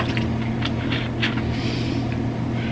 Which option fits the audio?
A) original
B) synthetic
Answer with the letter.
A